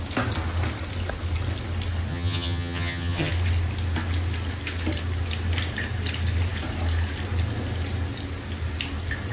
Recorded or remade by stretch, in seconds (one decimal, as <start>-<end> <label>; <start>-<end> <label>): 0.0-2.1 recorded; 2.1-3.3 remade; 3.3-9.3 recorded